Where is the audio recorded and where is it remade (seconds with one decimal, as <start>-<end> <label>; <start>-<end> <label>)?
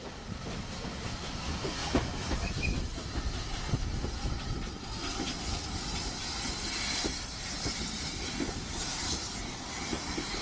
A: 0.0-1.8 recorded; 1.8-2.5 remade; 2.5-10.4 recorded